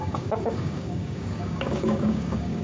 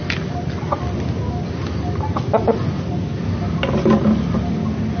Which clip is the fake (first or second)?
first